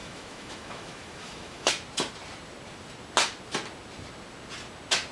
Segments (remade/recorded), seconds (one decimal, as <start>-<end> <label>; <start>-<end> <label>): 0.0-1.7 remade; 1.7-5.1 recorded